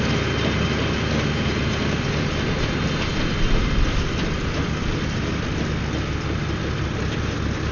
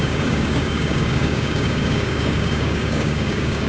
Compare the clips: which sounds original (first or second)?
first